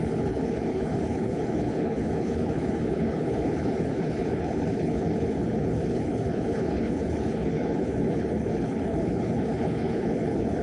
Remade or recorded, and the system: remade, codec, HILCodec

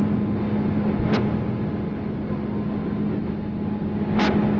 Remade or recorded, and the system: recorded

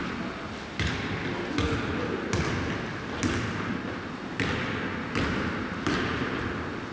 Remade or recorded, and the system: recorded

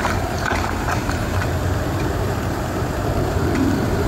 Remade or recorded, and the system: remade, vocoder, BigVGAN v2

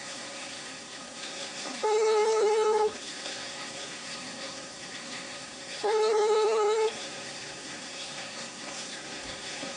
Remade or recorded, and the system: remade, codec, SNAC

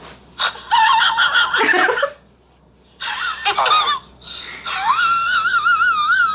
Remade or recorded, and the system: recorded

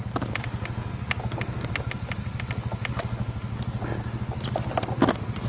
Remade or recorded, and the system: recorded